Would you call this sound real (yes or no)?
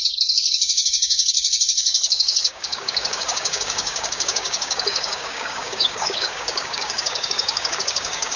no